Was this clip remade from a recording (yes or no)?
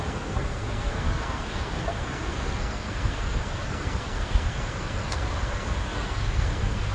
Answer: yes